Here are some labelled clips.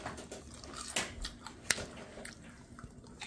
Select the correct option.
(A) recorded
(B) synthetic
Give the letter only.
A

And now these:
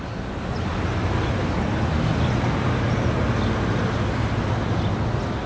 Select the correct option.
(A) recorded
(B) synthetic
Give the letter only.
A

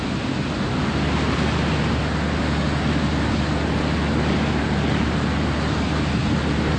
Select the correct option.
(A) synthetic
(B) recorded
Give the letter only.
B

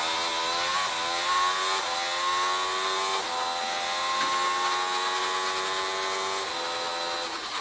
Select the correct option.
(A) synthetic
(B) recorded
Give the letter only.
B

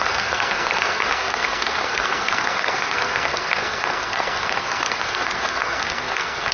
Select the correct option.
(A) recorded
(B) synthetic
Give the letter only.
B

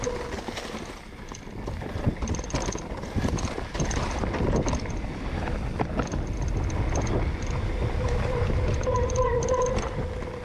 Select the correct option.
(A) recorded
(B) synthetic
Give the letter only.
A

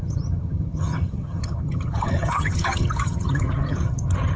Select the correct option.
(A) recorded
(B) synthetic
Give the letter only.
B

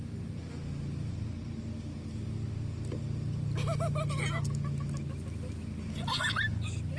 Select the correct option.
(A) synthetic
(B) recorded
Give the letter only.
B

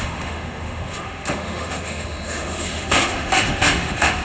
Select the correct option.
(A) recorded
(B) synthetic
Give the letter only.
B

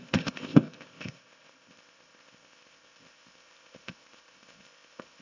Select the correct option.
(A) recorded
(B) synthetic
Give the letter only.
B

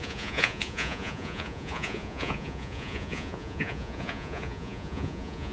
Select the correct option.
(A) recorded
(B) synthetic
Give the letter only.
B